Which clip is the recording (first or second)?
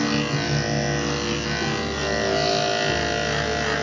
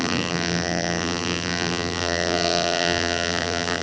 first